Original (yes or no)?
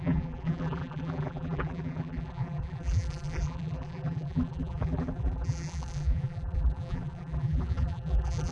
no